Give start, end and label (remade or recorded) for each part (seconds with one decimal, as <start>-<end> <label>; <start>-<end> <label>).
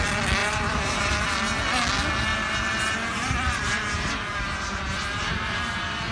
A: 0.0-0.4 recorded; 0.4-1.1 remade; 1.1-2.3 recorded; 2.3-6.1 remade